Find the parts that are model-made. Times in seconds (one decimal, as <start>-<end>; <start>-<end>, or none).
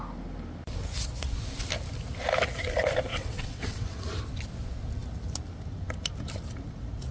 3.1-4.0